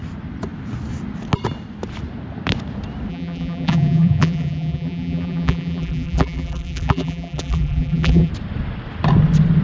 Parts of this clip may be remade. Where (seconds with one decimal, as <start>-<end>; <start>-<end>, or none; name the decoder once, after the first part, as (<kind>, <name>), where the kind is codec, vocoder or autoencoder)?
3.1-8.3 (vocoder, BigVGAN v2)